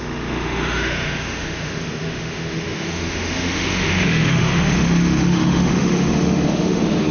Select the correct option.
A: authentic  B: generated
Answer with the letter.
B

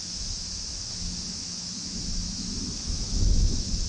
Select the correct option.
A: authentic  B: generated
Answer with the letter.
B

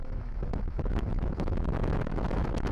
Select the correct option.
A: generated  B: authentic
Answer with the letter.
A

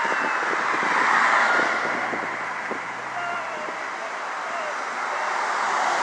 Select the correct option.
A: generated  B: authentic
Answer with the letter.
B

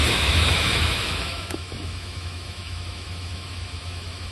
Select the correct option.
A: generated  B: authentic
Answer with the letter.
A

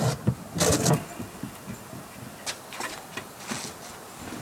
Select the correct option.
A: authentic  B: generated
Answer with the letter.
A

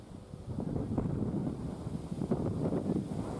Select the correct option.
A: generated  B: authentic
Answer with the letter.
B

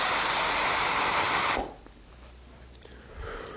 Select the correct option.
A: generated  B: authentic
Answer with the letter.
B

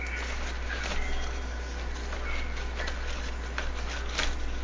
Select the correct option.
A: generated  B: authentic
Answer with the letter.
B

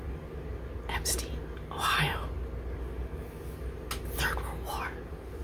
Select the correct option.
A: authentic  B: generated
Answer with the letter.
A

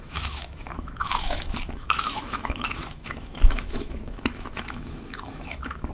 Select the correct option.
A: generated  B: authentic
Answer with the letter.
A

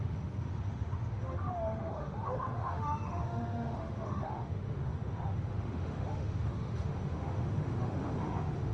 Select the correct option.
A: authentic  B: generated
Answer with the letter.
B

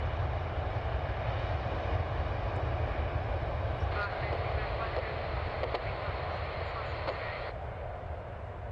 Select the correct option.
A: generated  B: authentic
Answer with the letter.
B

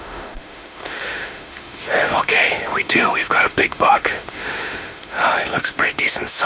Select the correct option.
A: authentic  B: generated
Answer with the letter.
B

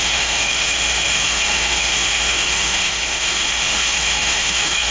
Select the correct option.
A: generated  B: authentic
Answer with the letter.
A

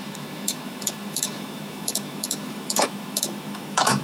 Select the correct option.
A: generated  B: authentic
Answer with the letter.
A